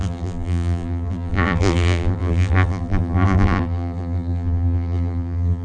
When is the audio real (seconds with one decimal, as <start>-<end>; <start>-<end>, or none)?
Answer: none

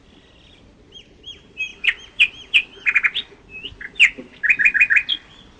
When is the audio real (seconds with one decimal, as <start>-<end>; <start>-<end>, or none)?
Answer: 0.0-5.6

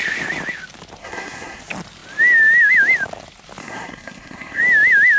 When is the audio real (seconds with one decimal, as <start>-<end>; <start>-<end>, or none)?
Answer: 0.0-1.0; 1.6-3.6; 4.6-5.2

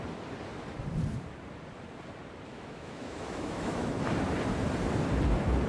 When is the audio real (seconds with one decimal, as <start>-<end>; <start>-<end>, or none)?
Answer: 0.0-2.5; 3.9-5.7

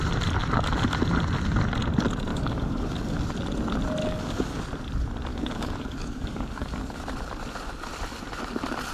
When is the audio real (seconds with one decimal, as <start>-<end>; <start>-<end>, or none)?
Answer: 0.0-2.3; 3.2-4.0; 4.6-5.3; 7.0-8.9

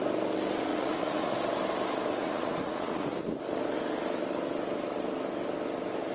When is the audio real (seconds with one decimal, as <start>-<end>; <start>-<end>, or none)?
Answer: 0.0-0.7; 1.3-2.2; 3.4-6.1

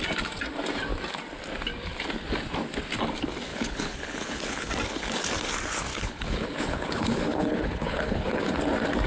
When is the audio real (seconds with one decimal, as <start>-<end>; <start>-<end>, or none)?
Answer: 0.0-3.5; 4.7-5.9; 8.4-9.1

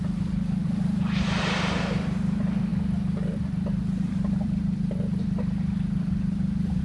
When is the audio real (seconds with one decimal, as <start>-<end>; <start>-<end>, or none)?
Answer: none